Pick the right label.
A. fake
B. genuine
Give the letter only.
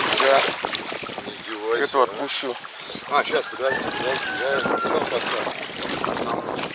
B